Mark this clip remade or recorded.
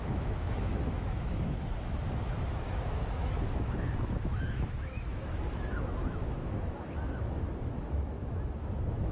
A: remade